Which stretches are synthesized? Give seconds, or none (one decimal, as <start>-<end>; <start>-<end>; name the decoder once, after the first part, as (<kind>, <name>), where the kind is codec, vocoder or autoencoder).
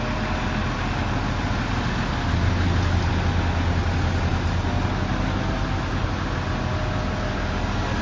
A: none